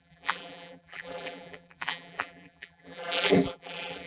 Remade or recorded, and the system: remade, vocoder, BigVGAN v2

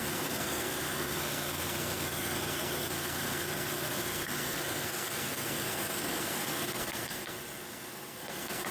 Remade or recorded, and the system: remade, codec, SNAC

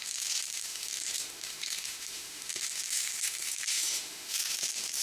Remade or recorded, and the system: remade, autoencoder, DAC-VAE